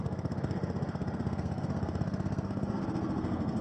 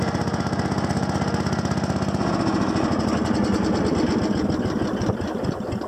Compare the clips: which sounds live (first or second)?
second